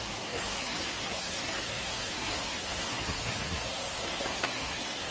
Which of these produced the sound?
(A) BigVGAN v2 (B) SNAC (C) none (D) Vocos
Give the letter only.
B